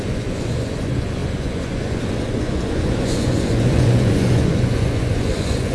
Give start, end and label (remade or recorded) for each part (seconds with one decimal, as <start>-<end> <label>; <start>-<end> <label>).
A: 0.0-5.7 remade